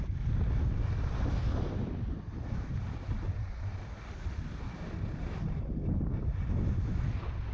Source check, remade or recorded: recorded